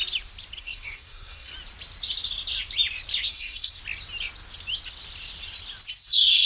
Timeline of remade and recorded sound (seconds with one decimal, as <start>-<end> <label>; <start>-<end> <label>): 0.0-0.6 recorded; 0.6-1.5 remade; 1.5-3.3 recorded; 3.3-3.8 remade; 3.8-5.9 recorded; 5.9-6.5 remade